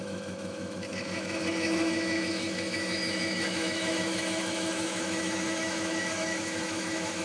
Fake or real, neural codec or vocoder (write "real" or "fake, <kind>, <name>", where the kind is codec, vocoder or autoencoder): fake, autoencoder, DAC-VAE